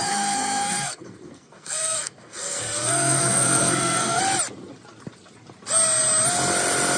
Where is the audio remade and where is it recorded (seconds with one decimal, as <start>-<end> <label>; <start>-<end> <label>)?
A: 0.0-4.2 remade; 4.2-7.0 recorded